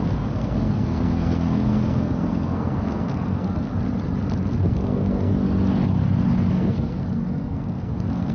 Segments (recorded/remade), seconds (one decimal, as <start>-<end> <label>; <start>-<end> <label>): 0.0-3.7 remade; 3.7-4.5 recorded; 4.5-5.3 remade; 5.3-6.5 recorded; 6.5-8.3 remade